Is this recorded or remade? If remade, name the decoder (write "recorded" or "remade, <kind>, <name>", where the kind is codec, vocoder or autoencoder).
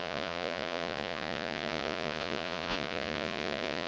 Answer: remade, vocoder, Vocos